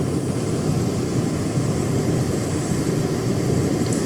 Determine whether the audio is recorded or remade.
recorded